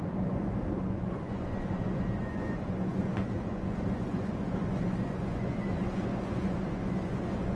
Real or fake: fake